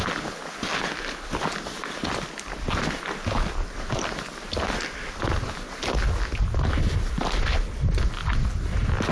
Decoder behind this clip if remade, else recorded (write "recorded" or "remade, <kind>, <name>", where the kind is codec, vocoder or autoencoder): recorded